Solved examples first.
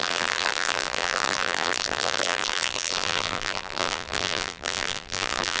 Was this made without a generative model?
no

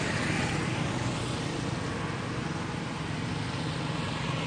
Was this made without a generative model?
yes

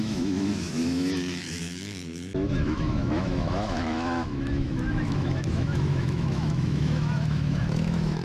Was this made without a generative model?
no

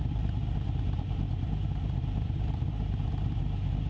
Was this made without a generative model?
no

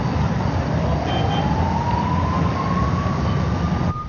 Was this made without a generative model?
yes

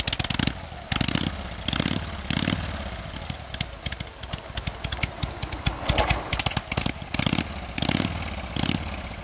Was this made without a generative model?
yes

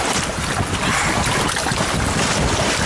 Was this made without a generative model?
yes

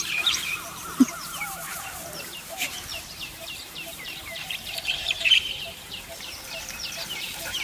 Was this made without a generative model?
no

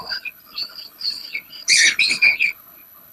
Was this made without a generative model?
no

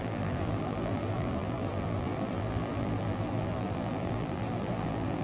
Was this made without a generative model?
no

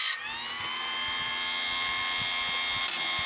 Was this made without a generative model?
yes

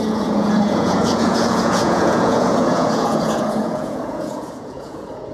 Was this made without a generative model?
no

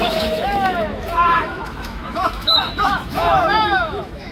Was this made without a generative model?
no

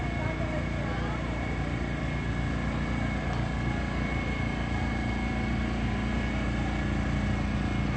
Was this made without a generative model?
yes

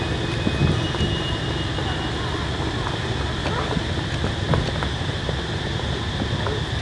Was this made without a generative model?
yes